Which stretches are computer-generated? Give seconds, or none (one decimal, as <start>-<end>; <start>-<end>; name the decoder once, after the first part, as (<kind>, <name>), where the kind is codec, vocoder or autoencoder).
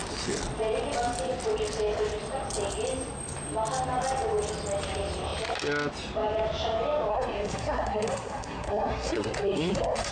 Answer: 7.1-10.1 (codec, SNAC)